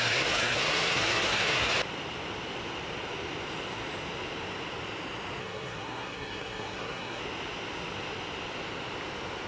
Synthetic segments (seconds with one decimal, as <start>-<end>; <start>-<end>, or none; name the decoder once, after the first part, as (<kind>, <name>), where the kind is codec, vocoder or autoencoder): 0.0-1.7 (codec, SNAC); 5.4-7.2